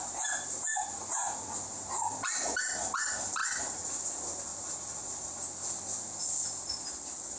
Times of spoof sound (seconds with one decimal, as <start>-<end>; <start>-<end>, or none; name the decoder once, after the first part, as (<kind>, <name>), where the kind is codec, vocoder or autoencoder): 0.7-1.4 (vocoder, Vocos); 3.4-4.0; 4.5-5.1